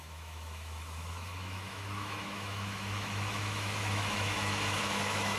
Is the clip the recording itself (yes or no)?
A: no